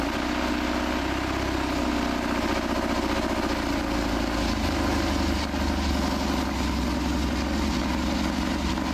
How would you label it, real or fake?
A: real